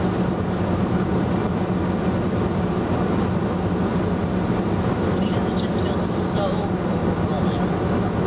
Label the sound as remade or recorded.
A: recorded